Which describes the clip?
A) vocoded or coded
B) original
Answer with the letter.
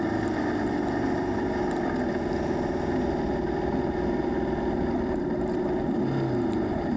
B